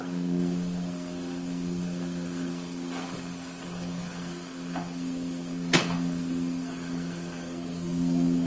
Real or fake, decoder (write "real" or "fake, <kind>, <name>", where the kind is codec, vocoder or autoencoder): fake, codec, SNAC